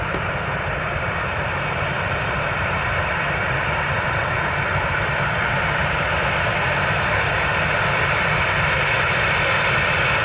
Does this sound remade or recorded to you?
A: remade